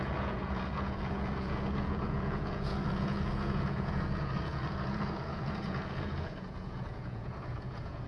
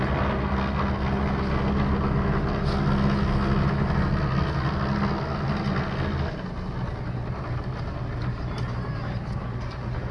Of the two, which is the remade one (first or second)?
first